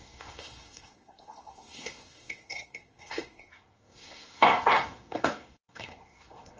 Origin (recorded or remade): remade